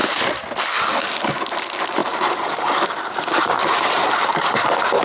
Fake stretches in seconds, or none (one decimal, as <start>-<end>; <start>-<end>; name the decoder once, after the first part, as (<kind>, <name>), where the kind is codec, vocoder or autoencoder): 2.0-4.3 (vocoder, BigVGAN v2)